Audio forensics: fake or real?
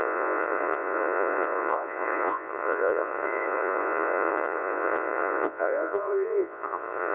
fake